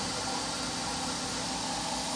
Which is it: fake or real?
real